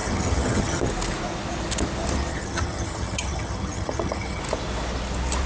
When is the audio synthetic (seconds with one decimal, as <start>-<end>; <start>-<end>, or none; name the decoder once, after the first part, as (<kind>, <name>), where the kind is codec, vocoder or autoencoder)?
0.0-0.8 (vocoder, HiFi-GAN); 2.3-4.4